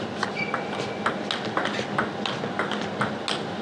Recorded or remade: recorded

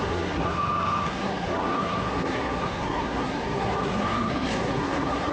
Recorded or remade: remade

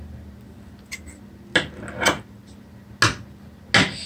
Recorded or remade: recorded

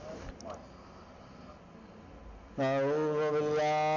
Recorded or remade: recorded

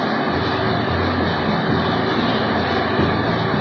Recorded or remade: recorded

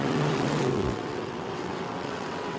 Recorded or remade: remade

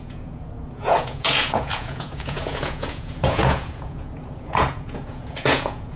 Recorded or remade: remade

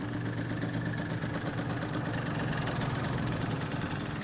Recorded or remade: recorded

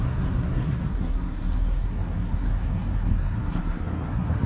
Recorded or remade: remade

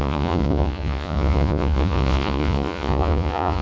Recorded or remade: remade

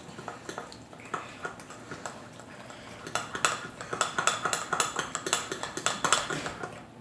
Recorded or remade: recorded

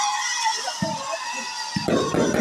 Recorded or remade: recorded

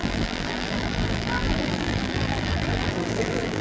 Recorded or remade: remade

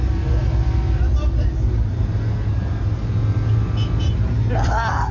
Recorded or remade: recorded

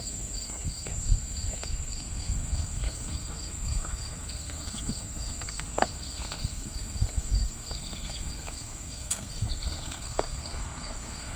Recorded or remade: remade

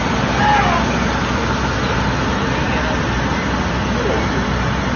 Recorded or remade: recorded